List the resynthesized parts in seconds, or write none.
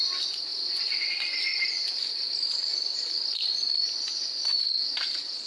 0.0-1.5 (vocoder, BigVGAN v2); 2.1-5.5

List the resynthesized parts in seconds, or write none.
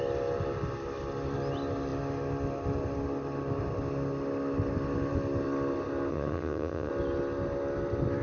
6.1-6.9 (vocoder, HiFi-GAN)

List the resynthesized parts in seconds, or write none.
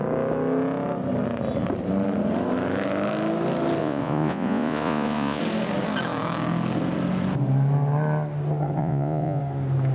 3.8-5.4 (vocoder, Vocos); 8.8-9.4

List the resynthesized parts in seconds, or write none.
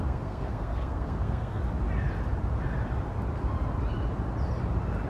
0.0-1.6 (codec, SNAC)